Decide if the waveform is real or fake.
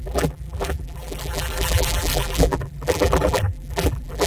fake